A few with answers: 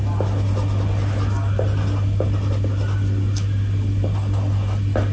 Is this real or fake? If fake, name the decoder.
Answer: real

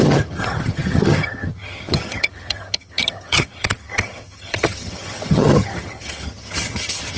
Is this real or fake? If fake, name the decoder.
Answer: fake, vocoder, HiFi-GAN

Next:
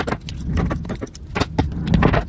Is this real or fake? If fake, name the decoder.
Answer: real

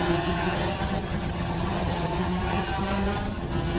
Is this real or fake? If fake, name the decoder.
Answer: fake, vocoder, HiFi-GAN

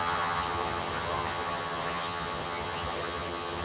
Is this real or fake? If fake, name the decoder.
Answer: fake, vocoder, HiFi-GAN